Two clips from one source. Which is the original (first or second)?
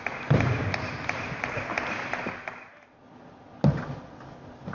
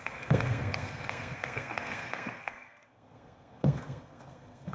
first